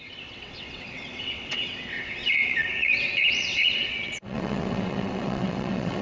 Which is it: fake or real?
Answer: fake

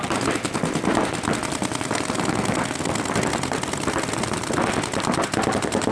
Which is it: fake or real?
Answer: real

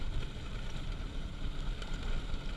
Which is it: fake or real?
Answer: fake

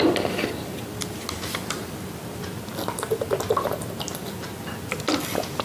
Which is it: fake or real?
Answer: real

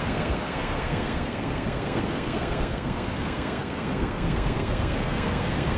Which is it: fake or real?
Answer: fake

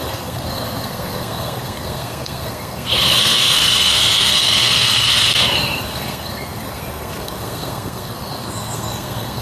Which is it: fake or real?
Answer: fake